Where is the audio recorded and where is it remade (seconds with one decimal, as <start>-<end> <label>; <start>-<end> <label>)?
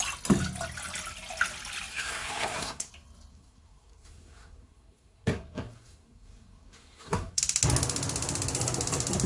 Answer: 0.0-1.9 recorded; 1.9-2.9 remade; 2.9-3.3 recorded; 3.3-7.4 remade; 7.4-9.3 recorded